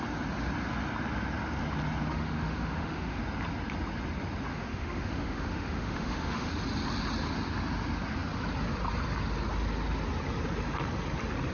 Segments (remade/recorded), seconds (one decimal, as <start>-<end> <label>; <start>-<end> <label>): 0.0-2.1 recorded; 2.1-3.2 remade; 3.2-4.5 recorded; 4.5-6.5 remade; 6.5-11.5 recorded

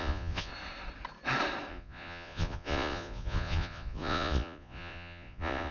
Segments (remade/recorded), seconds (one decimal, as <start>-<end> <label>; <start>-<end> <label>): 0.0-0.5 remade; 0.5-1.7 recorded; 1.7-5.7 remade

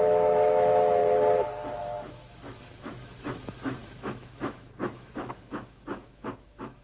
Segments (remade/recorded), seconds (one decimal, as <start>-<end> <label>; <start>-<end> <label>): 0.0-1.0 remade; 1.0-1.8 recorded; 1.8-6.8 remade

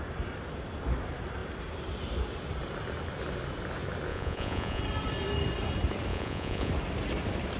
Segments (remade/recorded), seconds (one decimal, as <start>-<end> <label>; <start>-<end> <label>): 0.0-4.1 recorded; 4.1-4.8 remade; 4.8-6.1 recorded; 6.1-6.7 remade; 6.7-7.6 recorded

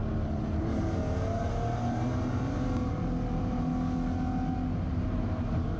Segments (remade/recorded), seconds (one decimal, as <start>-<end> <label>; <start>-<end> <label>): 0.0-0.6 recorded; 0.6-3.7 remade; 3.7-4.9 recorded; 4.9-5.8 remade